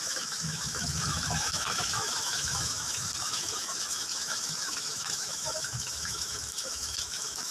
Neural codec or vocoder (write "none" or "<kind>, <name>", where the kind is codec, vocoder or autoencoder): autoencoder, DAC-VAE